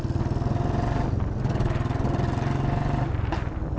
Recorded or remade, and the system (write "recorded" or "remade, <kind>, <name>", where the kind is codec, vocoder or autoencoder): recorded